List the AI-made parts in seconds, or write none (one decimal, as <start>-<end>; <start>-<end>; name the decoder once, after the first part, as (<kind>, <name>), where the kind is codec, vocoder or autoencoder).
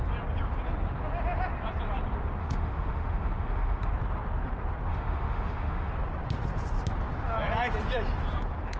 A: 2.4-3.9 (autoencoder, DAC-VAE); 4.9-5.9